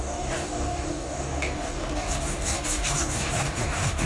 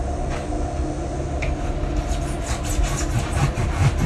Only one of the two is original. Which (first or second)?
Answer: second